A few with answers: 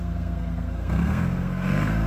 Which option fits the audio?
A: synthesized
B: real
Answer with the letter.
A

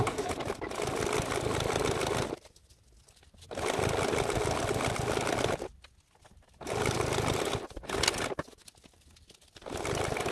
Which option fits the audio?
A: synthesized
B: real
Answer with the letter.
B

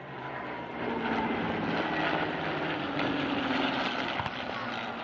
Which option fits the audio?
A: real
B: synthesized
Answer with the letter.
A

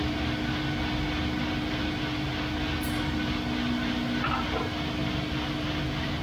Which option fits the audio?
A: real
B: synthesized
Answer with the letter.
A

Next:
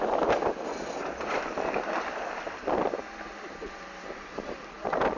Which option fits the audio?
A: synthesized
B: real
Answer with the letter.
B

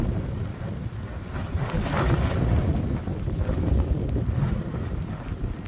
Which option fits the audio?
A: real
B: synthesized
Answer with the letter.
A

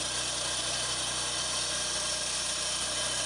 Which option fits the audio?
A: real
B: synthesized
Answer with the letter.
A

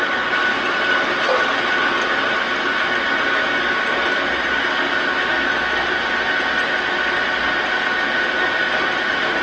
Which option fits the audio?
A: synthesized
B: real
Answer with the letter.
B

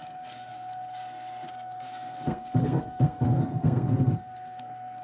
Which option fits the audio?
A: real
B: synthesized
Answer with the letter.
B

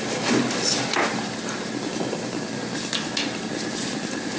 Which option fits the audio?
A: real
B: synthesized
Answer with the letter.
A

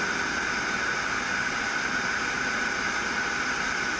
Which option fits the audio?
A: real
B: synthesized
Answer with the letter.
A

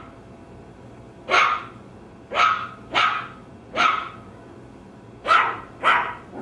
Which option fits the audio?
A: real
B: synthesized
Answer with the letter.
A